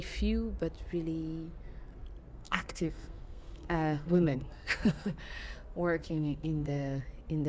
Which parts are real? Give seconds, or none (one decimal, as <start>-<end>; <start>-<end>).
0.0-2.3; 5.2-6.0; 7.0-7.5